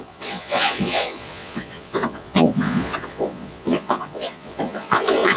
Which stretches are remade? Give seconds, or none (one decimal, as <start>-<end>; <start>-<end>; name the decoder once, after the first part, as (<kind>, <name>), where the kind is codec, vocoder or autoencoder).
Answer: 0.0-5.4 (vocoder, Vocos)